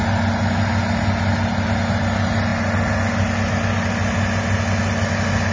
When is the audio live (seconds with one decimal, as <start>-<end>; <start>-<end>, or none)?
0.0-5.5